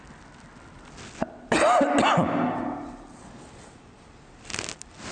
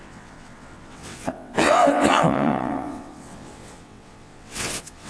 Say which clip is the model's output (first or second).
second